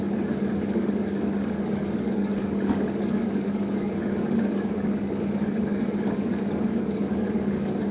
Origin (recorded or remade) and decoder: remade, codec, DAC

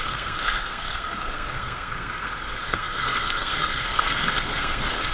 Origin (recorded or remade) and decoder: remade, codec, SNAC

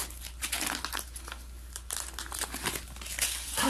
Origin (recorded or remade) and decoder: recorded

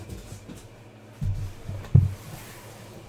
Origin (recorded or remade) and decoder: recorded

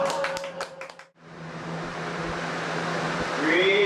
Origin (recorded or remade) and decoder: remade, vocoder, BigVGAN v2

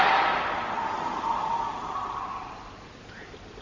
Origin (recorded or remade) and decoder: recorded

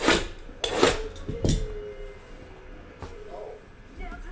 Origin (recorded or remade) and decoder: recorded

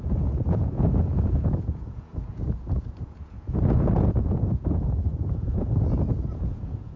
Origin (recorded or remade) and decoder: remade, vocoder, Vocos